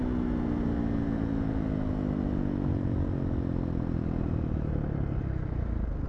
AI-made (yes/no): no